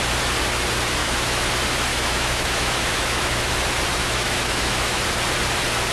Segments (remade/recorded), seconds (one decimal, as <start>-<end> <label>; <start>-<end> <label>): 0.0-1.0 recorded; 1.0-1.5 remade; 1.5-1.9 recorded; 1.9-3.5 remade; 3.5-4.0 recorded; 4.0-5.0 remade; 5.0-5.9 recorded